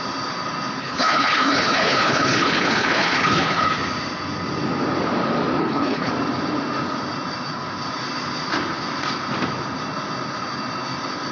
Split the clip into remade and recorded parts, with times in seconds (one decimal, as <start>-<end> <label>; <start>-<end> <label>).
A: 0.0-0.8 recorded; 0.8-3.7 remade; 3.7-5.6 recorded; 5.6-6.1 remade; 6.1-11.3 recorded